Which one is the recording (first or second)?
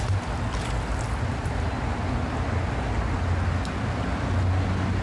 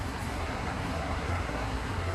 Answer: first